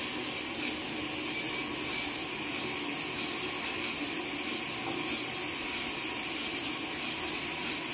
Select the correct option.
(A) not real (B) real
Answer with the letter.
B